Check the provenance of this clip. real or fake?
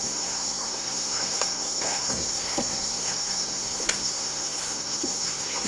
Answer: fake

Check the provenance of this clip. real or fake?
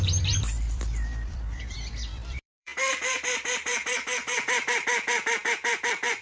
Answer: fake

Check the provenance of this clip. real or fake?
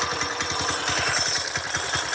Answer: real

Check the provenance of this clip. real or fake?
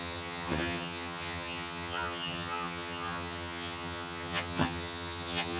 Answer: fake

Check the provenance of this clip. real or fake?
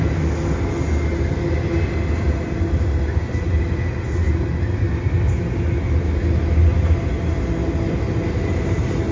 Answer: real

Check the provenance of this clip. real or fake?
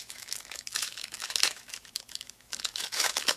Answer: fake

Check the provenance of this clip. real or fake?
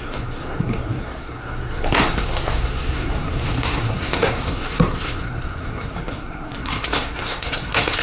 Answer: fake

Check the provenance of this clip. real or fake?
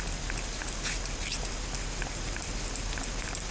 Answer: real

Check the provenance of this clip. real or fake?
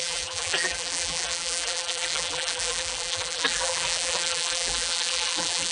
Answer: fake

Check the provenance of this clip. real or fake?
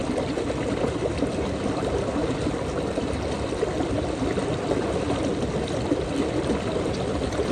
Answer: real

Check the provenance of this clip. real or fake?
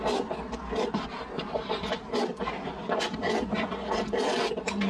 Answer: real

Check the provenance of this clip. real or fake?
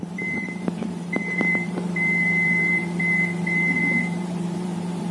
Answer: fake